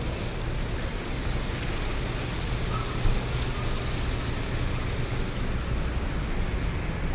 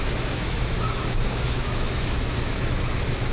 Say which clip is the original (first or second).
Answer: first